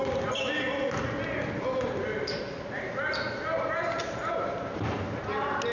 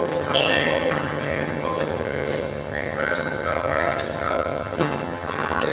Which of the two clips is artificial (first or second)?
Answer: second